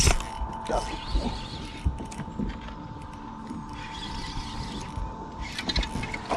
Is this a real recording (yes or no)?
yes